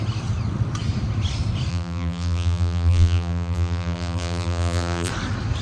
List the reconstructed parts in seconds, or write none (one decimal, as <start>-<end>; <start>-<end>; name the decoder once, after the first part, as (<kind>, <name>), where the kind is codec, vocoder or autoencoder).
1.7-5.1 (vocoder, BigVGAN v2)